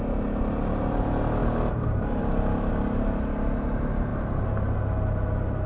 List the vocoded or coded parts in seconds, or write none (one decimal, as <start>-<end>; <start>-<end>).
none